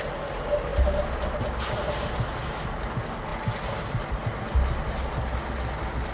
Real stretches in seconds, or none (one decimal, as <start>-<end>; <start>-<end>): 0.0-6.1